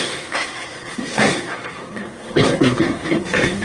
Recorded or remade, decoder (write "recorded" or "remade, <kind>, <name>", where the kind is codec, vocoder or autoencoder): remade, codec, SNAC